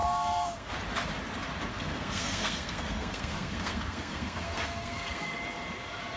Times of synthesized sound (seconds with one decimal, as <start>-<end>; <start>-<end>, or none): 0.0-0.7; 1.7-5.4